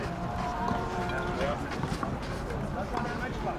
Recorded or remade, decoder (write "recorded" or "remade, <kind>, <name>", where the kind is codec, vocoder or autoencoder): recorded